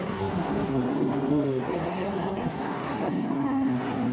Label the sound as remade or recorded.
remade